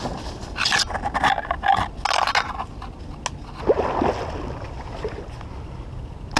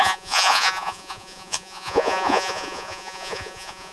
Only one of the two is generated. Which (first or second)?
second